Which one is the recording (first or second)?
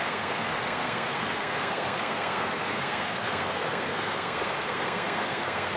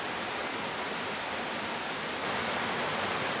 second